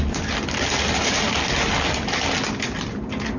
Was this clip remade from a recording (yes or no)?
no